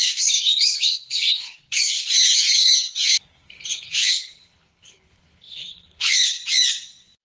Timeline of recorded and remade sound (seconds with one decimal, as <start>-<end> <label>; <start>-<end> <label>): 0.0-6.4 remade; 6.4-7.2 recorded